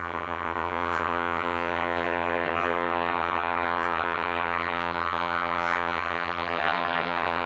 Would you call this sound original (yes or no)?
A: no